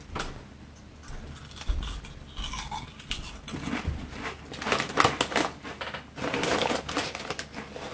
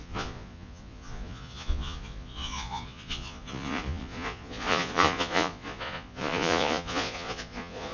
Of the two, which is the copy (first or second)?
second